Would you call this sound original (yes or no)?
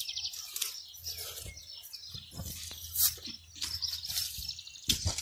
yes